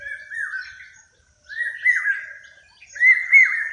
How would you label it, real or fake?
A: real